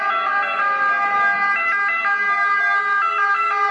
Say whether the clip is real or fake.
real